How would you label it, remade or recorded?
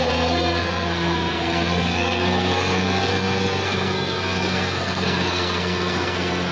remade